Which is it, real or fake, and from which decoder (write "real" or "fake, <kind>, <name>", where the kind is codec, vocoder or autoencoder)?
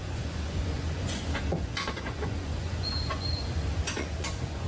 fake, vocoder, Vocos